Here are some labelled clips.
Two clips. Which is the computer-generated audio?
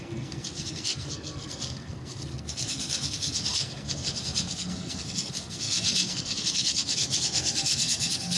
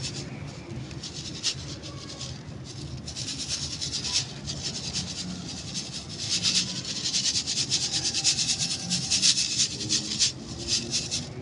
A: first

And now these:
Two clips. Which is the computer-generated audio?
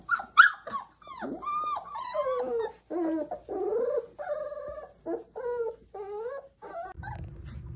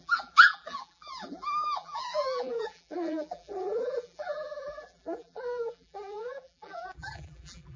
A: second